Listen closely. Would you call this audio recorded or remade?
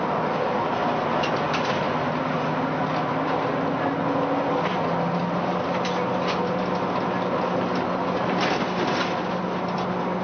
recorded